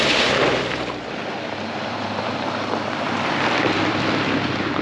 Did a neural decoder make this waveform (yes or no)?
yes